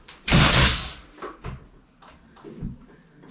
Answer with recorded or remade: recorded